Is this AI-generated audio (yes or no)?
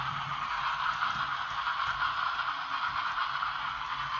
no